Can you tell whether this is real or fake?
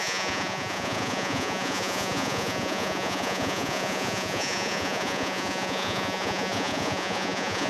fake